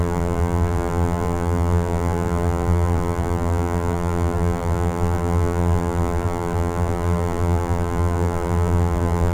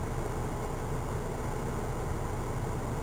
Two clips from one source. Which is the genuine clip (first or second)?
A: second